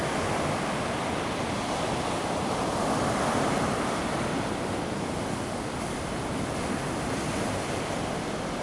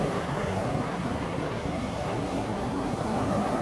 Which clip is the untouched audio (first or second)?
first